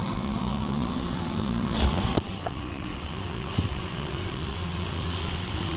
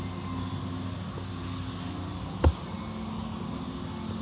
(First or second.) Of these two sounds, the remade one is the first